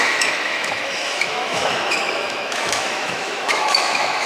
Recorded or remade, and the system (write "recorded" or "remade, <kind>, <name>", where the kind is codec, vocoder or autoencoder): remade, autoencoder, DAC-VAE